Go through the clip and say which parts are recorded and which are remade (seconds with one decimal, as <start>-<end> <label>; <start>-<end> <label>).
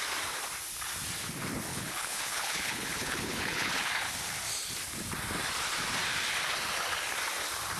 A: 0.0-1.7 recorded; 1.7-3.9 remade; 3.9-7.8 recorded